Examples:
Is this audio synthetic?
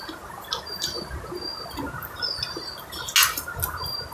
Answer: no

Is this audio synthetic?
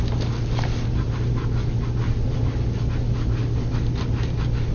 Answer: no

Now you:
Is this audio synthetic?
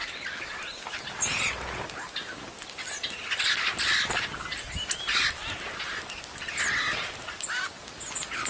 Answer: no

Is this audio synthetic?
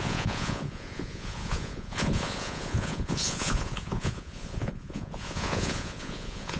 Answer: yes